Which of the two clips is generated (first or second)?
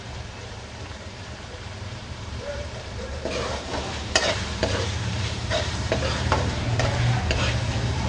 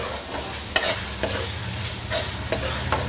first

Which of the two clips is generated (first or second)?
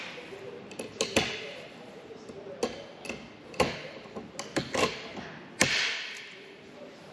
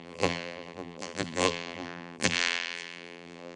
second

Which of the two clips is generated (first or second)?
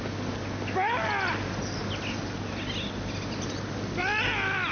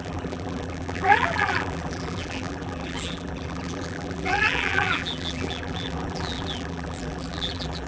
second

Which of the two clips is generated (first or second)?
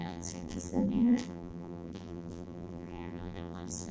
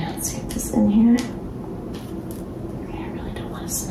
first